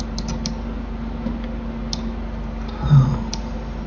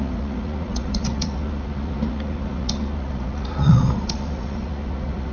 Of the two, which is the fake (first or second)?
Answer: second